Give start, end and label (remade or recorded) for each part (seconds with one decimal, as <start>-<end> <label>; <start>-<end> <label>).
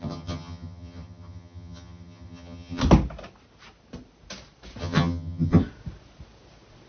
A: 0.0-2.8 remade; 2.8-4.8 recorded; 4.8-5.6 remade; 5.6-6.9 recorded